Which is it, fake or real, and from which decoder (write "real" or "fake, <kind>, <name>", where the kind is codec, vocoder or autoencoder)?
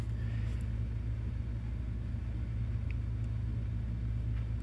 real